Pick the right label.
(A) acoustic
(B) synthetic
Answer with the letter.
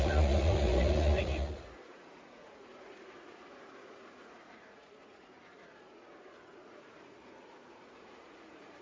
B